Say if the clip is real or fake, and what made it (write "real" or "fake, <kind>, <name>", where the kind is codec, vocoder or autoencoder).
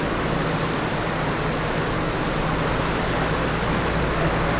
real